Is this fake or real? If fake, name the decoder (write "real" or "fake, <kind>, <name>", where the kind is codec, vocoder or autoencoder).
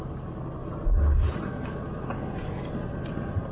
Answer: real